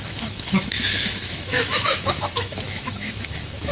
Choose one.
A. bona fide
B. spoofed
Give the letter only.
B